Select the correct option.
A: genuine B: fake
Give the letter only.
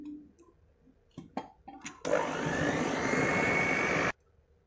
A